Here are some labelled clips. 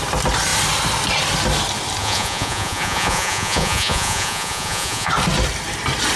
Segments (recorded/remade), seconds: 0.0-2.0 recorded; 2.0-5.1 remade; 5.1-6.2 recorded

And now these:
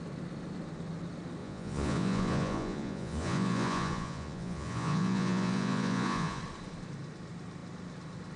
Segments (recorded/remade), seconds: 0.0-1.4 recorded; 1.4-6.4 remade; 6.4-8.4 recorded